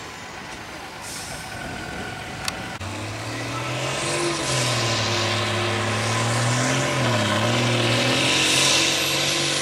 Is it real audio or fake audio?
real